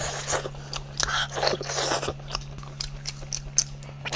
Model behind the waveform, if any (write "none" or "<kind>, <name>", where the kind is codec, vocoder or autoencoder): none